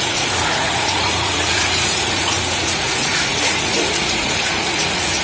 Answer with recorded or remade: remade